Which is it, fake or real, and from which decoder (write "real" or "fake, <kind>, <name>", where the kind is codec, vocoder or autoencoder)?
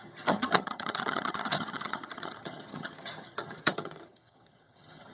fake, vocoder, HiFi-GAN